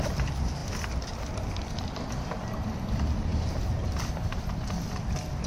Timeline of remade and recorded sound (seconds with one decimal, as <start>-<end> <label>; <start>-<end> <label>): 0.0-5.5 recorded